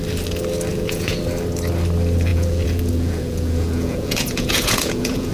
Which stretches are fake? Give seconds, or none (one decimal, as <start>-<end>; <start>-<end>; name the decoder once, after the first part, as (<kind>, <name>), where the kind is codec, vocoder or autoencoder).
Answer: 0.7-1.2 (vocoder, Vocos); 2.3-5.3